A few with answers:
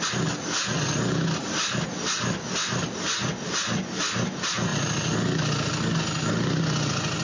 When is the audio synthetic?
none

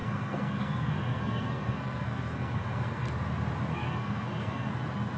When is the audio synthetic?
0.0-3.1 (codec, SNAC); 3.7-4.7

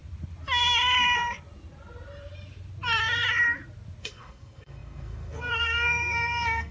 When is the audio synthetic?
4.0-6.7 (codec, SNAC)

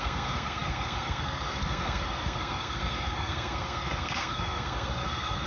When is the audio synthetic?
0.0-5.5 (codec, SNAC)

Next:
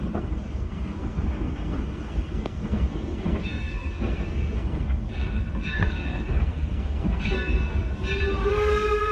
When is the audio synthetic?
0.0-7.9 (codec, SNAC); 8.5-9.1